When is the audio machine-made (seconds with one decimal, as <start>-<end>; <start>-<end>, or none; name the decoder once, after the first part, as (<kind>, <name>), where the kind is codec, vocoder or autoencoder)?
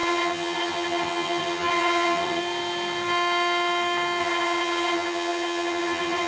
0.0-2.4 (vocoder, HiFi-GAN); 4.2-6.3